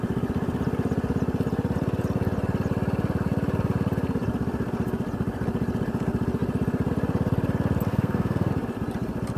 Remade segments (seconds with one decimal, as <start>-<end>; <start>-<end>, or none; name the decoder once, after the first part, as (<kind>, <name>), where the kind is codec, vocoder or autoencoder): 7.9-8.5 (codec, SNAC)

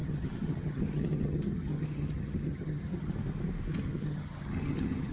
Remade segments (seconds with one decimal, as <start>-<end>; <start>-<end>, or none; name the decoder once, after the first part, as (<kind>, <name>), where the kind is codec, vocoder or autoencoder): 0.0-3.1 (vocoder, HiFi-GAN); 3.7-5.1

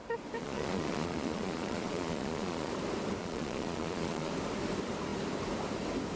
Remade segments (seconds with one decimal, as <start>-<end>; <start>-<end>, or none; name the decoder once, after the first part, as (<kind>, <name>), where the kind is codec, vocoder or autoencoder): 0.4-2.7 (vocoder, Vocos); 3.2-4.3